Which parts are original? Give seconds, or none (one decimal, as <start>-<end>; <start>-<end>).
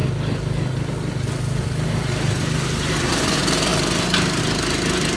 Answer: 0.0-3.7; 4.4-5.2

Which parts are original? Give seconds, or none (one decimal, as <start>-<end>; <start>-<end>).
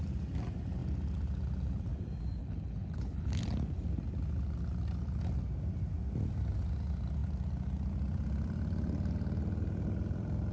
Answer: 0.0-2.4; 3.4-10.5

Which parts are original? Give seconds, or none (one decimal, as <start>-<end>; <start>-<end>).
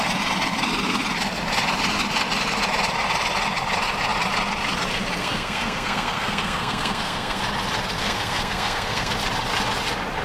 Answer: 0.0-5.2; 7.4-8.0; 9.1-10.2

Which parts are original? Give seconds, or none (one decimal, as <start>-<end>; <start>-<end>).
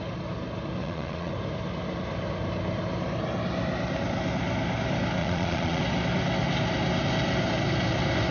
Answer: 0.0-0.8; 1.3-5.2; 5.8-8.3